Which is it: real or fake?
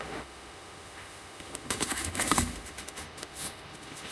fake